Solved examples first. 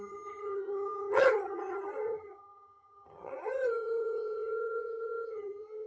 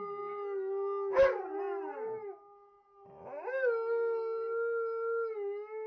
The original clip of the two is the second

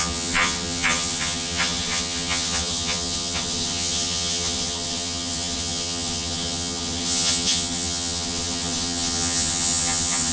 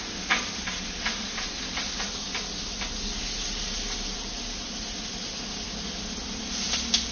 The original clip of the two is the second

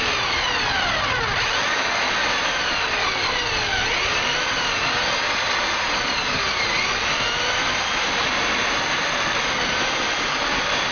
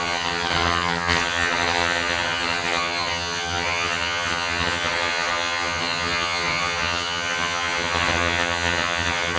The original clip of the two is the first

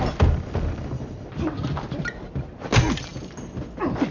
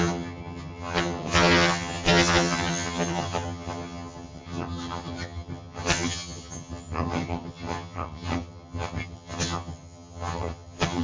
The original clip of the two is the first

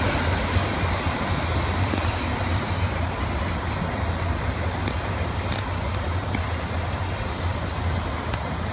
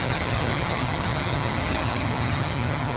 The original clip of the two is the first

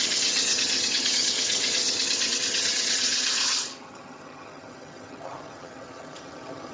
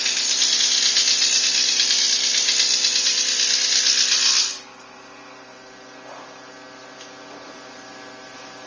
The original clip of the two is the second